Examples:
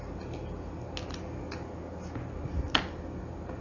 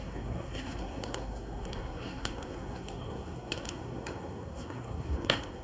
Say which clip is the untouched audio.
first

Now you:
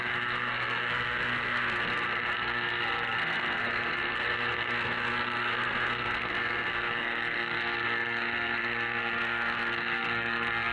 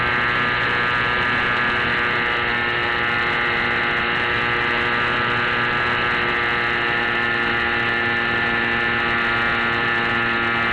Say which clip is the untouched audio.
second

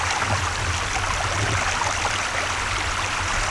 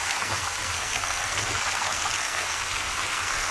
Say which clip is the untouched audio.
first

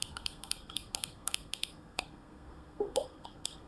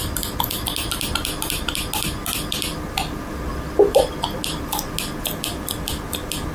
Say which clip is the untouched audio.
second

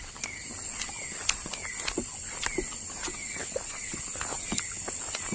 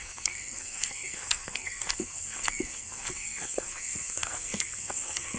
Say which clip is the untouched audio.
first